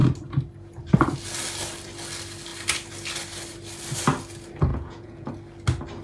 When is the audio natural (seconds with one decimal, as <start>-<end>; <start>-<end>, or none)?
0.0-4.7; 5.3-6.0